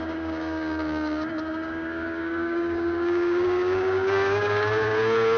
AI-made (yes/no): yes